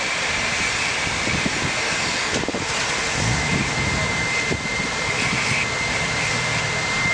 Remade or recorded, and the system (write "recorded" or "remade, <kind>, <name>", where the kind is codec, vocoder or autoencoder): remade, vocoder, BigVGAN v2